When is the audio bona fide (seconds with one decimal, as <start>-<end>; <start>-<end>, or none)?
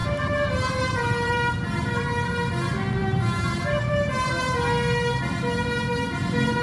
2.0-3.0; 4.3-6.6